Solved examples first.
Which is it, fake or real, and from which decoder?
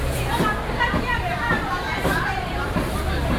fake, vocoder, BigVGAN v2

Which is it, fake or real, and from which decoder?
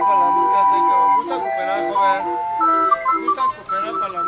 real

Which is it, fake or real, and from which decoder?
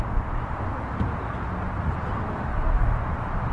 real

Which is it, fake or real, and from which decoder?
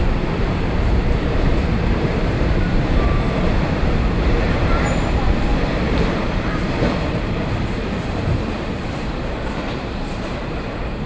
fake, vocoder, BigVGAN v2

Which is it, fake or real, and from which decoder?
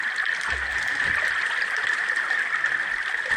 real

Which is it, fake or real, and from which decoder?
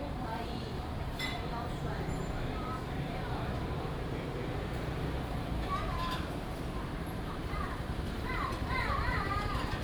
fake, vocoder, BigVGAN v2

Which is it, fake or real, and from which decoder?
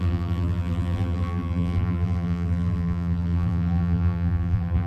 fake, vocoder, BigVGAN v2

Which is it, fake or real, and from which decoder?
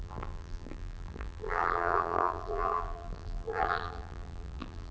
fake, vocoder, BigVGAN v2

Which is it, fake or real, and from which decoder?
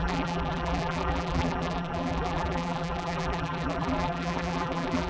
fake, vocoder, BigVGAN v2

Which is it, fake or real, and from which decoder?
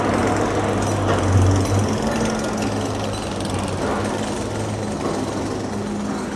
real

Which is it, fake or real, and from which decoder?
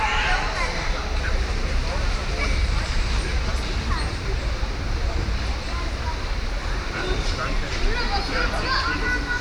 fake, vocoder, BigVGAN v2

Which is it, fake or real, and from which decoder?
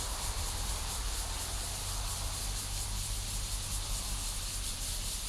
fake, vocoder, BigVGAN v2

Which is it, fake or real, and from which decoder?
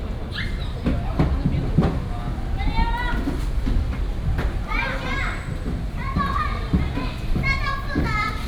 real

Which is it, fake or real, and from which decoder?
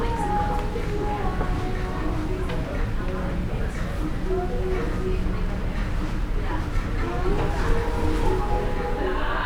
real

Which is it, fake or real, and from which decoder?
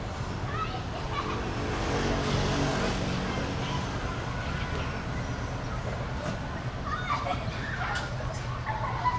real